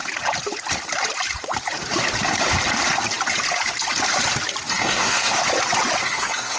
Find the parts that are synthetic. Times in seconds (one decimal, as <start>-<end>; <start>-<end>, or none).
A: 4.7-5.4; 6.0-6.6